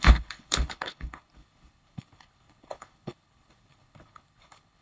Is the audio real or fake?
fake